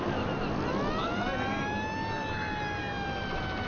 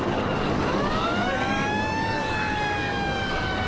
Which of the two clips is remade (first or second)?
second